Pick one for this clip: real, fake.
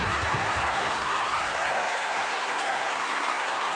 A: fake